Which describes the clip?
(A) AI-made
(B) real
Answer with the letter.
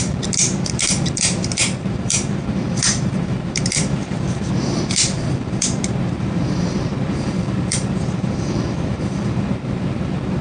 A